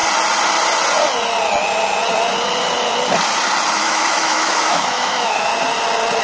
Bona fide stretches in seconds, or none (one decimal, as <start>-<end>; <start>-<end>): 0.0-3.7; 5.5-6.2